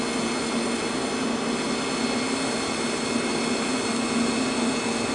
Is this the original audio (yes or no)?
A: yes